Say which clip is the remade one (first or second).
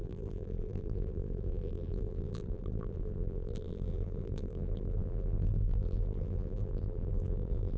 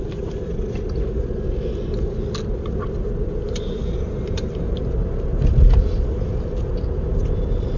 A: first